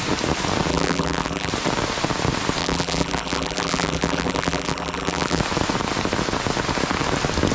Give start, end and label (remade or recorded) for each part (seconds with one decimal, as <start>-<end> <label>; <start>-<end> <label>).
0.0-0.7 recorded; 0.7-1.5 remade; 1.5-2.6 recorded; 2.6-5.4 remade; 5.4-7.5 recorded